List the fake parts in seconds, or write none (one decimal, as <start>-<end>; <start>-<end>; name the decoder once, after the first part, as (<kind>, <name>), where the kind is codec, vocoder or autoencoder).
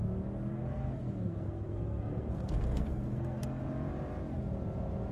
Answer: 0.5-3.6 (codec, SNAC)